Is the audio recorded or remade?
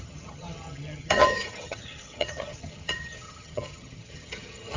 remade